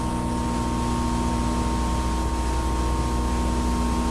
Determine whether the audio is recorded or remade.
recorded